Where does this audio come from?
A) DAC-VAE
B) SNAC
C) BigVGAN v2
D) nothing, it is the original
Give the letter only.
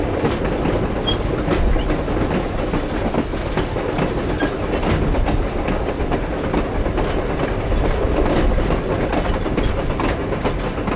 D